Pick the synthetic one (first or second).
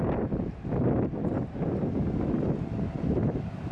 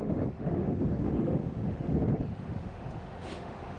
second